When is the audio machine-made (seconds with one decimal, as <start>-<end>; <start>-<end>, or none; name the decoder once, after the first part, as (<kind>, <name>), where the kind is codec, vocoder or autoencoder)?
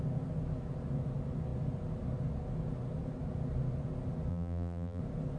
4.3-5.0 (vocoder, BigVGAN v2)